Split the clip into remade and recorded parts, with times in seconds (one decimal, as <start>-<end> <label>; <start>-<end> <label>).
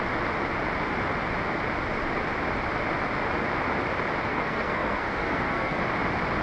0.0-4.3 recorded; 4.3-5.8 remade; 5.8-6.4 recorded